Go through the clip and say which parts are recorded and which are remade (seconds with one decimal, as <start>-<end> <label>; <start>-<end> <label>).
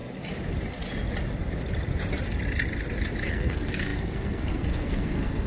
0.0-3.3 recorded; 3.3-5.5 remade